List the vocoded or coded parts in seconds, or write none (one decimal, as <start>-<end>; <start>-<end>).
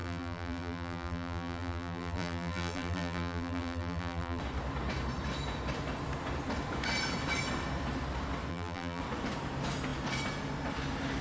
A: 0.0-4.4; 8.5-9.0